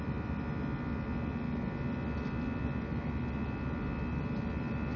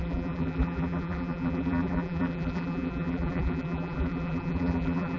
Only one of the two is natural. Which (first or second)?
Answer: first